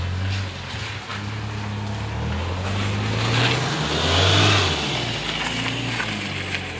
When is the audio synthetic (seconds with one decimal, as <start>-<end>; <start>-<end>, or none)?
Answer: none